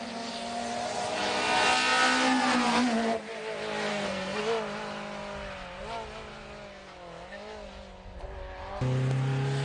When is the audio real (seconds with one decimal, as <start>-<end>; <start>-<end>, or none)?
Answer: 0.0-3.9; 4.4-9.6